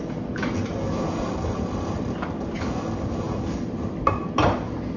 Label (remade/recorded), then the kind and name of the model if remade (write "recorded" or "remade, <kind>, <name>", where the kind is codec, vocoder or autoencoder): recorded